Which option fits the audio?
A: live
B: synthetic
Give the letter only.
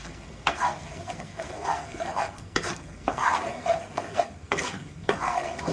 B